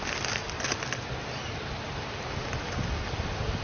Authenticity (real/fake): real